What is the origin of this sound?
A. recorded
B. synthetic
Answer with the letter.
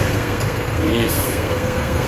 B